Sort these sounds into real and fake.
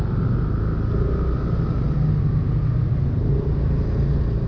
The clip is real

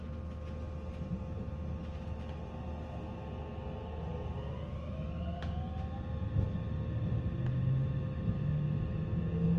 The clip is real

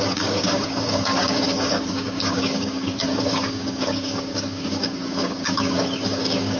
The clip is fake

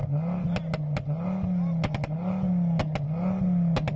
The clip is real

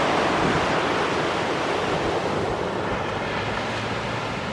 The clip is real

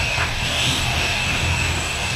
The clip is fake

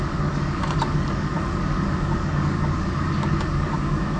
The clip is fake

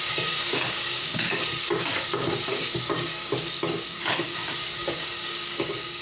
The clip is fake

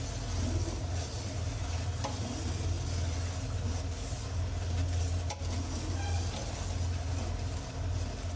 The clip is real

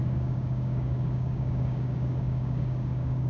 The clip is fake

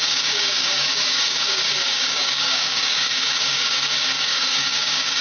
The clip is fake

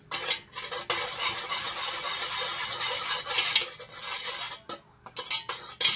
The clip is real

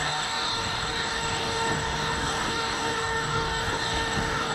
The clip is fake